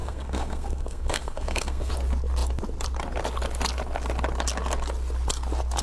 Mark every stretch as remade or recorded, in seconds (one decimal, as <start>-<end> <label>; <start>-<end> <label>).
0.0-1.9 remade; 1.9-5.8 recorded